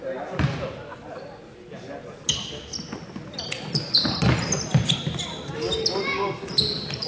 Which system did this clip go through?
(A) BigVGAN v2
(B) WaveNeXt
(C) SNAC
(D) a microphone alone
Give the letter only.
D